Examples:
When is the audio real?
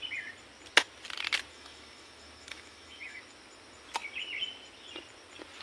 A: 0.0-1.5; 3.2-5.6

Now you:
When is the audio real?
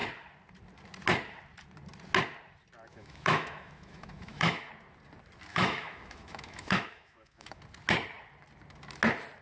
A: 0.0-2.9; 4.7-5.5; 7.6-9.4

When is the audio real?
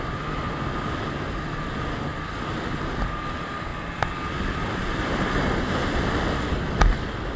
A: 0.0-7.4